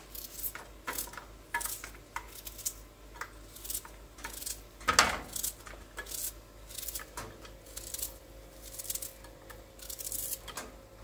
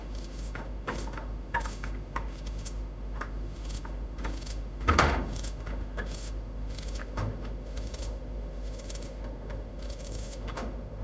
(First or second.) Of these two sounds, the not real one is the second